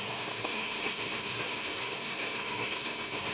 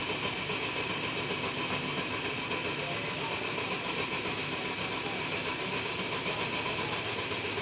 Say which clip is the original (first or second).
second